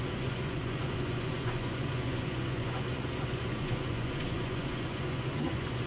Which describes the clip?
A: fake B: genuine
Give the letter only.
A